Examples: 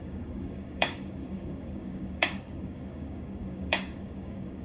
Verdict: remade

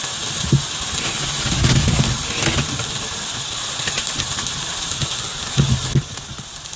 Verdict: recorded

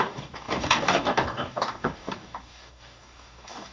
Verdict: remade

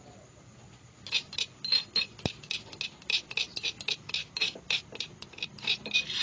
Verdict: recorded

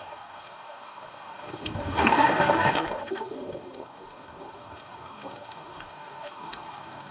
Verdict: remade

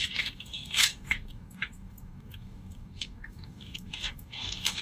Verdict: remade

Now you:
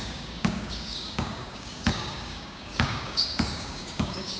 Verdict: remade